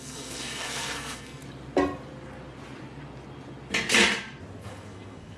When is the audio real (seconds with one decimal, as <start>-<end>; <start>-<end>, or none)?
1.4-4.6